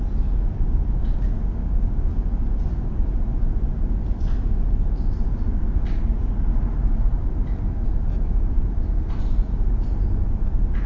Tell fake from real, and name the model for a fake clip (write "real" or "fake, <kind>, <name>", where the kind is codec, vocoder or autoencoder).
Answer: real